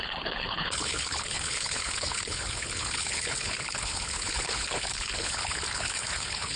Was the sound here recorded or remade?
remade